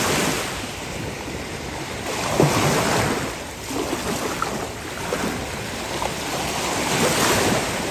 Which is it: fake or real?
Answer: real